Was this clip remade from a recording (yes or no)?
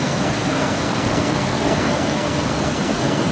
yes